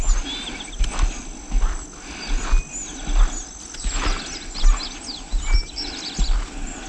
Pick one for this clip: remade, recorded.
recorded